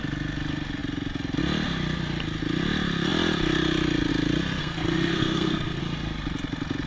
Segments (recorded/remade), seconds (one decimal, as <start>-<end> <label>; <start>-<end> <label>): 0.0-4.6 recorded; 4.6-5.8 remade; 5.8-6.9 recorded